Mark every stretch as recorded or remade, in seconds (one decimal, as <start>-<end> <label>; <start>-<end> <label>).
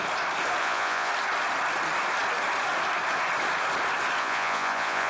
0.0-0.6 recorded; 0.6-1.1 remade; 1.1-4.2 recorded; 4.2-5.1 remade